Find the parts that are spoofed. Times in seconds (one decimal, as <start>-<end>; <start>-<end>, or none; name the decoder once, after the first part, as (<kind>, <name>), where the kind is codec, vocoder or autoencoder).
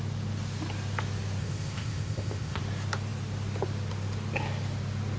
1.4-2.6 (codec, ZipCodec)